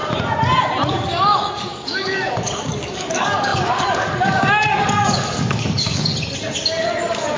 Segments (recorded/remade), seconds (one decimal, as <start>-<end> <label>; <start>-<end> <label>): 0.0-0.9 recorded; 0.9-6.1 remade; 6.1-6.7 recorded; 6.7-7.4 remade